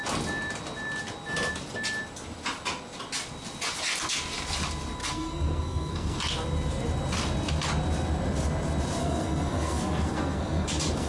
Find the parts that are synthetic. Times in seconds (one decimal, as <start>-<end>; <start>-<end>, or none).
5.0-6.2; 9.0-11.1